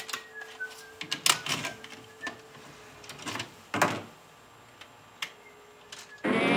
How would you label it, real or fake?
real